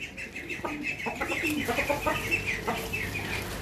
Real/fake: real